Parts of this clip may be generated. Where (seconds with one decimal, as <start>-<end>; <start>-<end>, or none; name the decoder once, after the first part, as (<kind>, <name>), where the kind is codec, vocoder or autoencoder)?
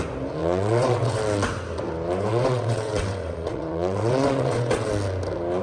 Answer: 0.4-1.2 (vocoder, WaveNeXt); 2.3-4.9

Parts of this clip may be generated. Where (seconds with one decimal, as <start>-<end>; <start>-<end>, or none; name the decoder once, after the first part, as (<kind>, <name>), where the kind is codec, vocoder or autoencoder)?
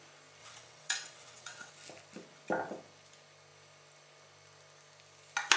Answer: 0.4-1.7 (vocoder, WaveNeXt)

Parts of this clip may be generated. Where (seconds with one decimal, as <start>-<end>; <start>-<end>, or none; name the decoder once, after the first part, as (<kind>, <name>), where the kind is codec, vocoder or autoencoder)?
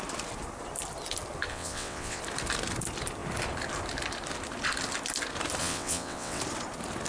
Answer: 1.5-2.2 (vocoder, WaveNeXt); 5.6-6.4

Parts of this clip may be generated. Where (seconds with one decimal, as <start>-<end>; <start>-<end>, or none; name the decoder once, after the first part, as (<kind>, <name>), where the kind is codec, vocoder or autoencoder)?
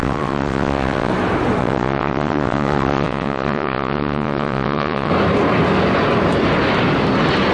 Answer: 0.0-1.1 (vocoder, WaveNeXt); 1.6-5.1